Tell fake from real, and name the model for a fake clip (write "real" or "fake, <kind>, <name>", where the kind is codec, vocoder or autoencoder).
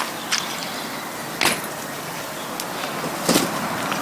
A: real